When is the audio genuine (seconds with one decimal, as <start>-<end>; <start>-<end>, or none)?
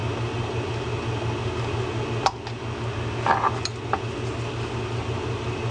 0.0-5.7